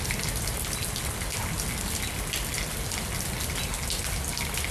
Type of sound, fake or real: real